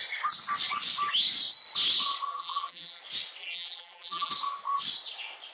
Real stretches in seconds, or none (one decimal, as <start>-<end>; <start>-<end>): 0.0-2.3; 3.0-3.4; 4.3-5.5